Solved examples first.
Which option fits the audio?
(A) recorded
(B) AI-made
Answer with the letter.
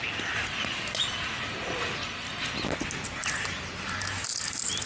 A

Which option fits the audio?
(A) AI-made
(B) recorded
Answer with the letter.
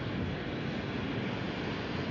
B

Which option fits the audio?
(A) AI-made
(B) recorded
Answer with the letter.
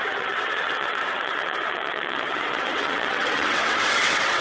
A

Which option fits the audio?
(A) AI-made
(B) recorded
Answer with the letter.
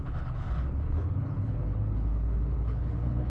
A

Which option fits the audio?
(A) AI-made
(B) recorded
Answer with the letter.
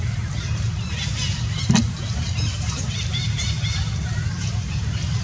A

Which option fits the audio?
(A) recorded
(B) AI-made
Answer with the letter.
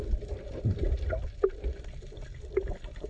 A